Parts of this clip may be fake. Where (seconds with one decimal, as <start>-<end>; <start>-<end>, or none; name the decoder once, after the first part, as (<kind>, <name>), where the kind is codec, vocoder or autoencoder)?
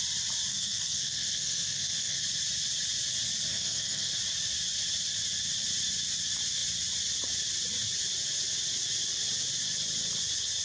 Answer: 0.5-2.2 (codec, SNAC); 3.5-4.1